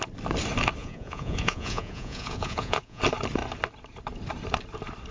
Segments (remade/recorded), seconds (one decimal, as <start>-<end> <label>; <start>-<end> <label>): 0.0-0.8 recorded; 0.8-3.0 remade; 3.0-5.1 recorded